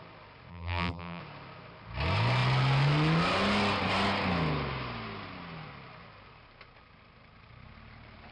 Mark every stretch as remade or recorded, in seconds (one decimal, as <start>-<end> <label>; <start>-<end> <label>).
0.0-0.5 recorded; 0.5-1.2 remade; 1.2-8.3 recorded